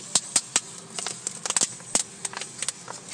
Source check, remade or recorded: recorded